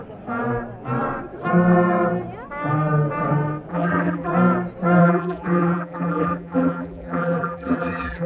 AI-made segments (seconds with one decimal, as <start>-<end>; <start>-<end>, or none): 3.7-4.3; 5.0-8.3

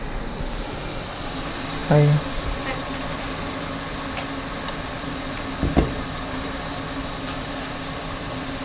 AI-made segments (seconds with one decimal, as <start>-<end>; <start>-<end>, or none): none

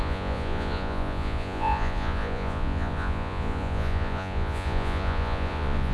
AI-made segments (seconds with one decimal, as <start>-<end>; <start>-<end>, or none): 0.0-5.9